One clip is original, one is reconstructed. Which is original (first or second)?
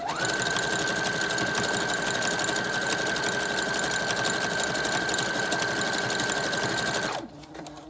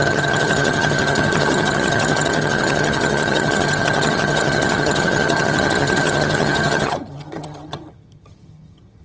first